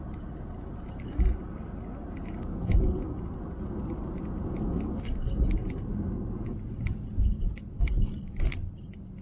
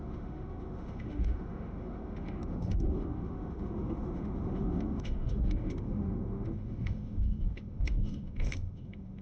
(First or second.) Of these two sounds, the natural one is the first